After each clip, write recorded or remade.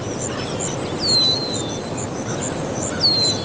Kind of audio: recorded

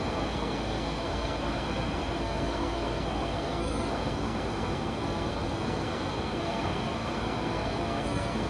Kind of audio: remade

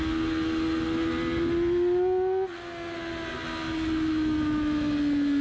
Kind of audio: recorded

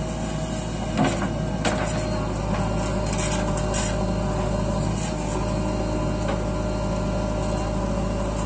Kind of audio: recorded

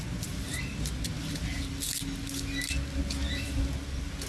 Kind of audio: recorded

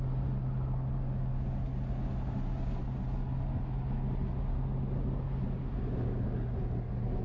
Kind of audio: recorded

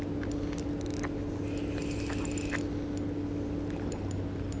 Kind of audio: recorded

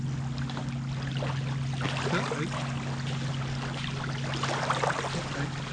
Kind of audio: recorded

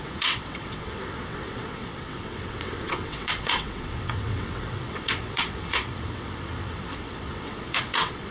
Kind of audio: remade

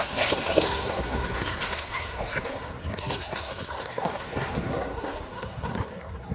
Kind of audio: remade